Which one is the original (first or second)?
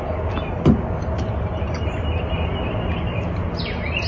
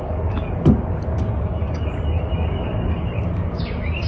first